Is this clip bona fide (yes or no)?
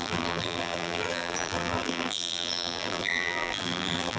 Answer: no